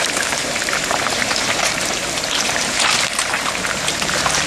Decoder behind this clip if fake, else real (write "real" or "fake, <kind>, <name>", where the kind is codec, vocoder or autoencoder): fake, vocoder, BigVGAN v2